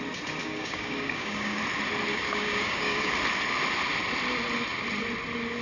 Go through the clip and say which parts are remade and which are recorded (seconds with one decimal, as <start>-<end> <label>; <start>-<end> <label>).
0.0-0.4 recorded; 0.4-1.6 remade; 1.6-2.1 recorded; 2.1-3.1 remade; 3.1-5.6 recorded